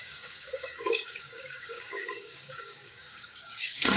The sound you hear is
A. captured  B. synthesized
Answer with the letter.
B